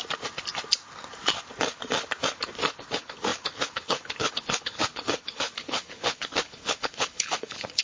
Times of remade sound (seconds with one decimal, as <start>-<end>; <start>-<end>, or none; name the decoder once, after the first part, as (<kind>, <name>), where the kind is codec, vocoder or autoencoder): 2.9-7.8 (codec, HILCodec)